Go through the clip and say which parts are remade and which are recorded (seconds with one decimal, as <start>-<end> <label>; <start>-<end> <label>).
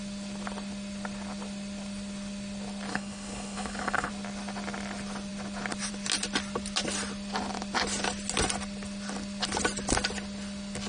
0.0-2.9 recorded; 2.9-4.1 remade; 4.1-10.9 recorded